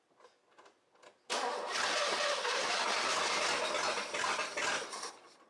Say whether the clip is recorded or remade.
recorded